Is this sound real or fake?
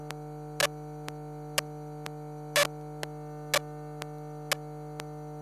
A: real